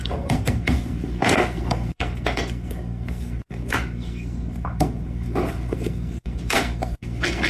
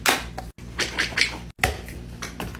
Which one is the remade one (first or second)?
first